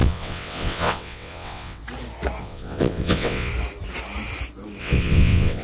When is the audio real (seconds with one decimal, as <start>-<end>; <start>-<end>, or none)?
1.8-2.4; 3.5-4.8